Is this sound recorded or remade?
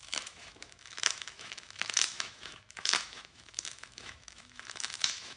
remade